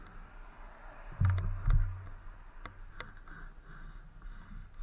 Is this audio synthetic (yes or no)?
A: no